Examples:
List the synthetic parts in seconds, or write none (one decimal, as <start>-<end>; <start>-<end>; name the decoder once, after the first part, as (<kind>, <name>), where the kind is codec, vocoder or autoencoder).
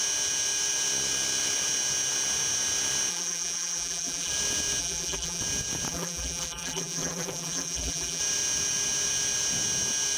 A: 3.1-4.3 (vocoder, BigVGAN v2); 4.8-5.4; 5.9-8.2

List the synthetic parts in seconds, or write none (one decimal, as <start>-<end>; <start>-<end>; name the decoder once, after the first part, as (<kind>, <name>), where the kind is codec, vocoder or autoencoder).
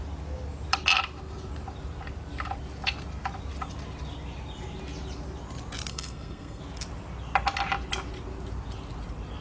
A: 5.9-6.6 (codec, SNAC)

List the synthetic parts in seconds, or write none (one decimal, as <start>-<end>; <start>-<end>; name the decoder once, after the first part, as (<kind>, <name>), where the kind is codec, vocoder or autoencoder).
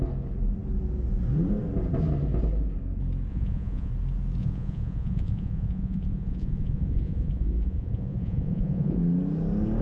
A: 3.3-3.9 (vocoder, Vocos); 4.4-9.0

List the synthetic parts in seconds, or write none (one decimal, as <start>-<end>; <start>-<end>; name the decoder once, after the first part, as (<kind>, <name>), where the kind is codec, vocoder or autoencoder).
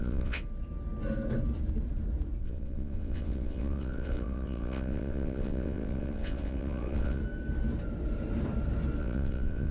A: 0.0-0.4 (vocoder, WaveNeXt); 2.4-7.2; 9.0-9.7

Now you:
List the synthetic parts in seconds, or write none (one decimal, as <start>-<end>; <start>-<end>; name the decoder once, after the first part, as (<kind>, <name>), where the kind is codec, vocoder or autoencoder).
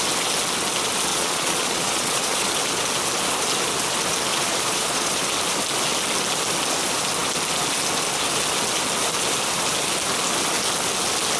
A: 1.1-2.5 (vocoder, Vocos); 4.3-5.1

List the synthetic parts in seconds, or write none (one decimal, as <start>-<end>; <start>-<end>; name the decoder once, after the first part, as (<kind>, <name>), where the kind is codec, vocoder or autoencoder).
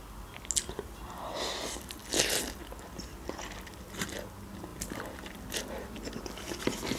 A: none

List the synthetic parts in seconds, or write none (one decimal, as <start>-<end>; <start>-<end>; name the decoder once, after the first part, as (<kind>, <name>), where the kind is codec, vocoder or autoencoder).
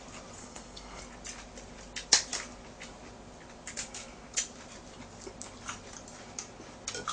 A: 0.4-1.0 (codec, SNAC)